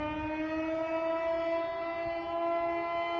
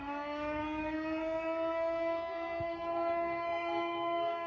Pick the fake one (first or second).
second